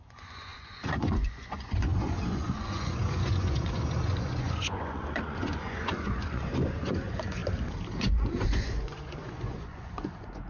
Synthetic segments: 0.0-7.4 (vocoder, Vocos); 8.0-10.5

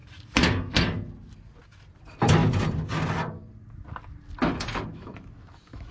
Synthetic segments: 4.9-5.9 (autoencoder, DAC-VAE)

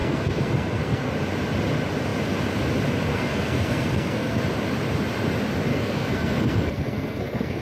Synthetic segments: 0.0-1.1 (codec, SNAC); 3.1-4.4; 5.7-7.6

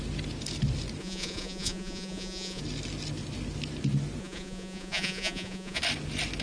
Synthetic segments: 1.0-2.6 (vocoder, Vocos); 4.2-5.8

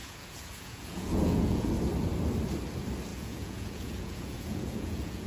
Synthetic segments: 0.0-1.7 (vocoder, Vocos); 3.1-5.3

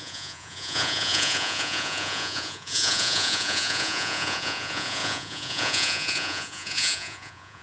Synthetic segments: 0.0-7.6 (vocoder, Vocos)

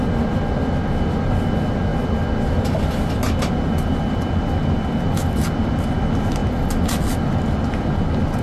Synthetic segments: none

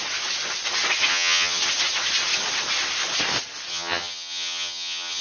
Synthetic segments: 1.1-1.6 (vocoder, HiFi-GAN); 3.7-5.2